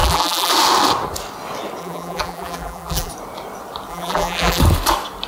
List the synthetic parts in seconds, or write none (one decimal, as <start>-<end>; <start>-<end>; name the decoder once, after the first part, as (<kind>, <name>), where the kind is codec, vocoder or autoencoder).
0.0-0.5 (vocoder, BigVGAN v2); 1.8-3.1; 3.9-4.6